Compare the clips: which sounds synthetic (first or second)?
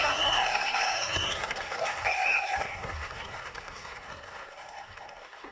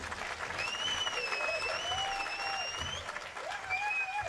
first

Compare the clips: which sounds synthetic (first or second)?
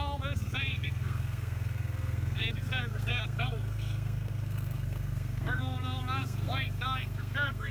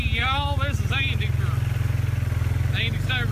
first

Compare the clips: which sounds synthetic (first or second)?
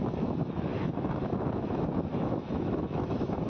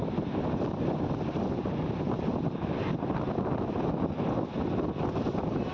first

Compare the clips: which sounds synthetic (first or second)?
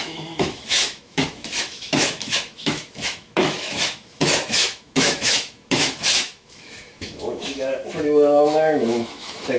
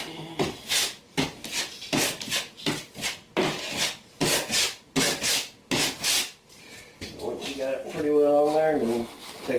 first